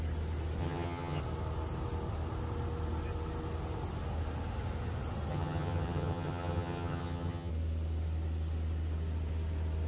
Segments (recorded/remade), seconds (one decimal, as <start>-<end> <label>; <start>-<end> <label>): 0.0-0.6 recorded; 0.6-1.2 remade; 1.2-5.3 recorded; 5.3-7.5 remade; 7.5-9.9 recorded